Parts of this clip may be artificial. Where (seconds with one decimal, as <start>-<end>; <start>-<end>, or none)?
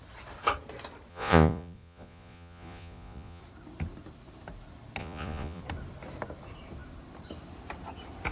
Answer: 1.1-3.4; 5.0-5.6